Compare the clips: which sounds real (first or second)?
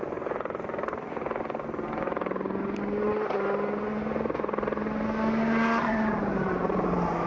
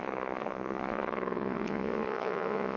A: first